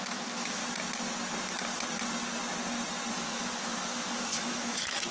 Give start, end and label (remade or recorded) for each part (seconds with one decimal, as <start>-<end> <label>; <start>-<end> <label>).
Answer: 0.0-0.6 remade; 0.6-3.1 recorded; 3.1-5.1 remade

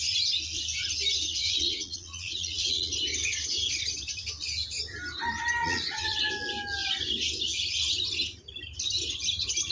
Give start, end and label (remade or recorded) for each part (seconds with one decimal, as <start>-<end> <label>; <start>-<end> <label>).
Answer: 0.0-1.3 recorded; 1.3-2.9 remade; 2.9-5.6 recorded; 5.6-6.3 remade; 6.3-9.7 recorded

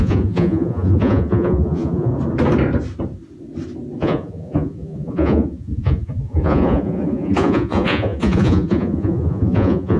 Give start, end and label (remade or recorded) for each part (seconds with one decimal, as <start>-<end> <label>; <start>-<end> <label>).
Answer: 0.0-2.1 remade; 2.1-4.0 recorded; 4.0-10.0 remade

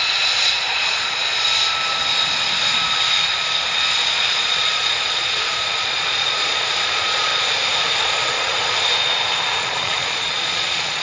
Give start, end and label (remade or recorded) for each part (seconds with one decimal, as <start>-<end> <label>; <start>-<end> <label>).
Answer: 0.0-1.2 remade; 1.2-4.0 recorded; 4.0-7.3 remade; 7.3-8.0 recorded; 8.0-8.5 remade; 8.5-9.6 recorded; 9.6-11.0 remade

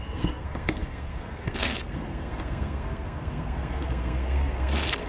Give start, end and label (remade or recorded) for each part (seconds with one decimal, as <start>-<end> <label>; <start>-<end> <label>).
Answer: 0.0-5.1 remade

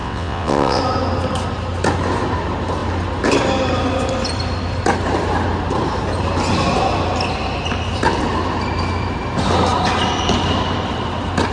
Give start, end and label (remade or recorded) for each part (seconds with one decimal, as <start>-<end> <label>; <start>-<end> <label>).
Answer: 0.0-0.8 remade; 0.8-11.5 recorded